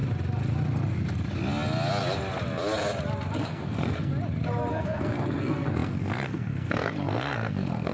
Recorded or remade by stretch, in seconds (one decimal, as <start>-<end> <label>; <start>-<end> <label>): 0.0-3.4 recorded; 3.4-4.1 remade; 4.1-4.7 recorded; 4.7-7.9 remade